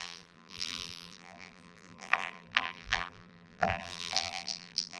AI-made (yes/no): yes